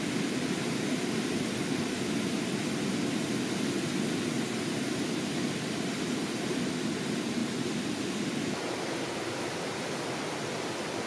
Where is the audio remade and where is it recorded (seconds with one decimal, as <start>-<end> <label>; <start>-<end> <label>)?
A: 0.0-11.1 recorded